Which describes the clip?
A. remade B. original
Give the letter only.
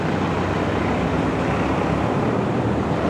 A